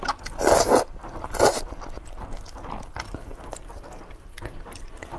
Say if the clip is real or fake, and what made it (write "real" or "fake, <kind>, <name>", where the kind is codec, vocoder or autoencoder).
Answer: real